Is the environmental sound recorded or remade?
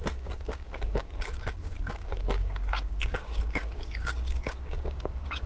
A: remade